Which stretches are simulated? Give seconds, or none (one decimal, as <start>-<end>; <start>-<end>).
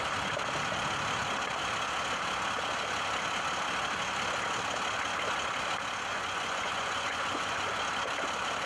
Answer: 6.1-7.7